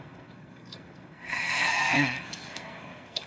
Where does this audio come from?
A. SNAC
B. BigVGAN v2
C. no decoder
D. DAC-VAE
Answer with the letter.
A